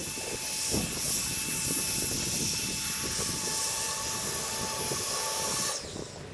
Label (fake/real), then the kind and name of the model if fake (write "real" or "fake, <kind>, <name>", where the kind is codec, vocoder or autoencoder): real